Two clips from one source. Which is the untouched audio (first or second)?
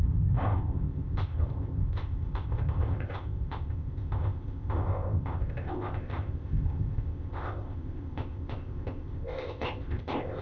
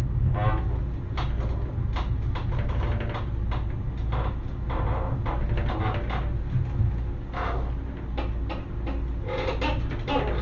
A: second